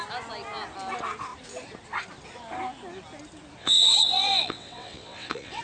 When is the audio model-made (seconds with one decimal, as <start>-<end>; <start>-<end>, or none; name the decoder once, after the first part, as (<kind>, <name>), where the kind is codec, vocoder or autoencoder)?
3.6-5.6 (vocoder, WaveNeXt)